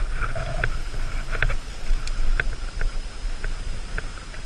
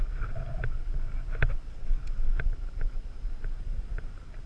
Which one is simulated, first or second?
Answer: second